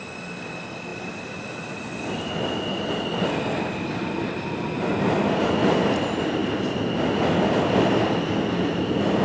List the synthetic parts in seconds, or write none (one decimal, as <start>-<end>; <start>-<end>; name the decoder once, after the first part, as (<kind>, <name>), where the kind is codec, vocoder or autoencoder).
none